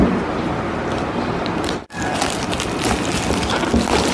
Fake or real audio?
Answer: real